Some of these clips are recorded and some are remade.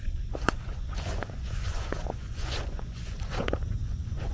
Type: remade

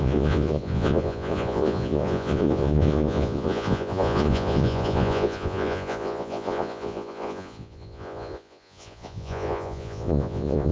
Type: remade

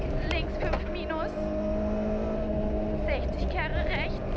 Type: recorded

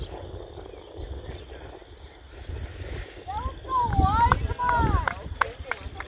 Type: recorded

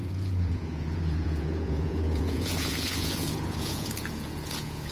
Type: remade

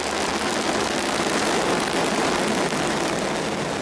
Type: recorded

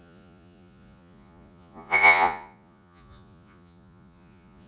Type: remade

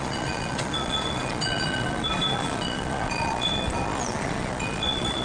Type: remade